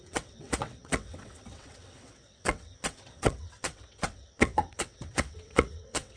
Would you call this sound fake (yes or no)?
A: yes